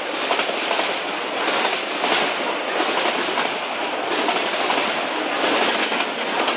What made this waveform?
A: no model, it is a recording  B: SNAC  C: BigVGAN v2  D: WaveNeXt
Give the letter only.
A